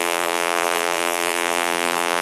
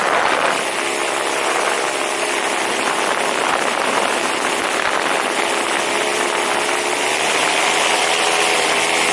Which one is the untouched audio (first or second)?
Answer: second